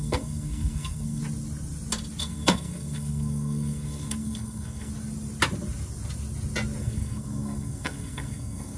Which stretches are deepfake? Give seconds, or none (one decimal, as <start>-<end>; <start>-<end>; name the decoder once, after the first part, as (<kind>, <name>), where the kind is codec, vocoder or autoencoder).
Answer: 0.0-1.2 (codec, SNAC); 2.2-4.9; 6.8-8.8